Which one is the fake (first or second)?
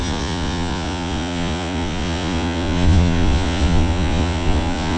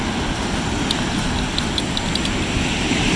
first